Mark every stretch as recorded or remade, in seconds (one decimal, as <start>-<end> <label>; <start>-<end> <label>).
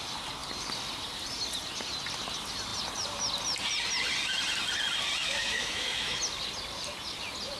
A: 0.0-5.2 recorded; 5.2-6.2 remade; 6.2-7.6 recorded